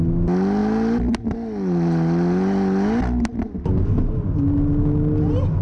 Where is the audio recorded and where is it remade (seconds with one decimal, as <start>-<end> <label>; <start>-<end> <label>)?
0.0-5.6 recorded